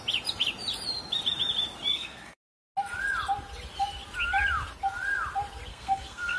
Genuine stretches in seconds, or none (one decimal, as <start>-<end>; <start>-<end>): 0.0-1.9; 2.5-5.7